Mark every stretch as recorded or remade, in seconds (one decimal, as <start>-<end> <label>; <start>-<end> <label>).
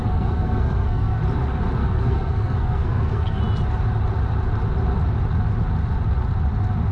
0.0-1.2 remade; 1.2-1.8 recorded; 1.8-3.4 remade; 3.4-6.9 recorded